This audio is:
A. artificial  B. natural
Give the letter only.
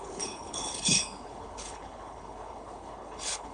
A